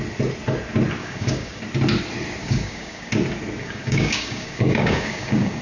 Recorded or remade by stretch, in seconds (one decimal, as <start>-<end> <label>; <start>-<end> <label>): 0.0-1.0 recorded; 1.0-1.6 remade; 1.6-2.4 recorded; 2.4-3.1 remade; 3.1-3.6 recorded; 3.6-5.6 remade